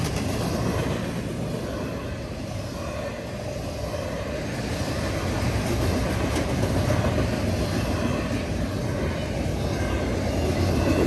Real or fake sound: real